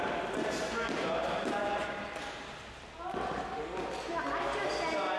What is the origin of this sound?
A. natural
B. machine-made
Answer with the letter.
A